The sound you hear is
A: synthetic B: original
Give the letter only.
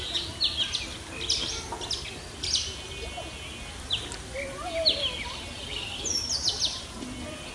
B